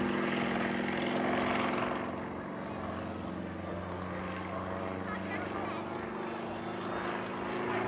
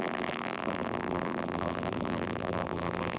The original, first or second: first